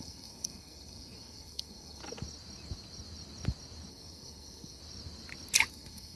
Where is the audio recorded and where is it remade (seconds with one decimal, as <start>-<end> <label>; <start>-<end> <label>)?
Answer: 0.0-2.0 remade; 2.0-3.9 recorded; 3.9-4.8 remade; 4.8-5.7 recorded; 5.7-6.2 remade